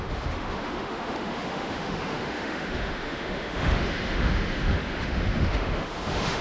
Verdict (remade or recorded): remade